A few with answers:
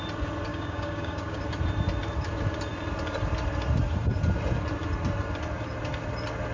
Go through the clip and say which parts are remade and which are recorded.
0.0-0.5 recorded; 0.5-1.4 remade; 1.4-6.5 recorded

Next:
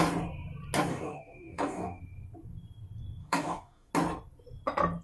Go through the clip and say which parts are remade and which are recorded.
0.0-0.9 recorded; 0.9-2.0 remade; 2.0-3.2 recorded; 3.2-3.9 remade; 3.9-5.0 recorded

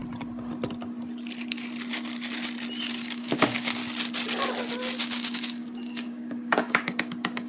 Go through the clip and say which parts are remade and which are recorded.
0.0-3.0 recorded; 3.0-3.8 remade; 3.8-5.0 recorded; 5.0-7.5 remade

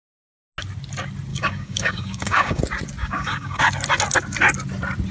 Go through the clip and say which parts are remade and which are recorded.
0.0-1.3 recorded; 1.3-2.6 remade; 2.6-3.0 recorded; 3.0-3.6 remade; 3.6-5.1 recorded